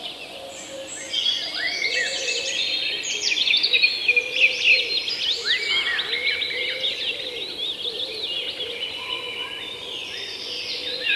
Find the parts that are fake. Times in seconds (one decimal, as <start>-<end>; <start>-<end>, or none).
0.0-4.0; 8.7-11.2